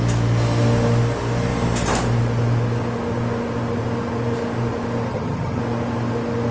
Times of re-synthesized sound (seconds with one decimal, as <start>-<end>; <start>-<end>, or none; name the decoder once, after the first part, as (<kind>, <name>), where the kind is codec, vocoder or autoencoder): 5.1-5.6 (vocoder, HiFi-GAN)